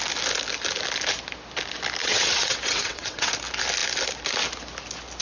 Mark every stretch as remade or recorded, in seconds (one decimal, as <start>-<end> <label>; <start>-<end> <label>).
0.0-2.0 recorded; 2.0-3.3 remade; 3.3-5.2 recorded